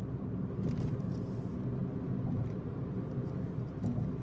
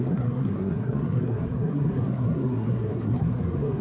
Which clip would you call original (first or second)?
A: first